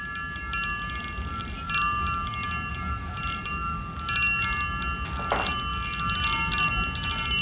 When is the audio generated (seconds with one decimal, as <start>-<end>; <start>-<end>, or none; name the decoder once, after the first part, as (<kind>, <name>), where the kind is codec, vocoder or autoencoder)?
2.7-3.5 (vocoder, BigVGAN v2)